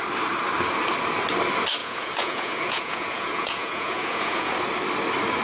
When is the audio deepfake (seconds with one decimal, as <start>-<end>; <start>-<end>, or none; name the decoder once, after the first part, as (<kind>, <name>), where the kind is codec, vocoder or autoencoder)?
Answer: 1.8-4.5 (vocoder, Vocos)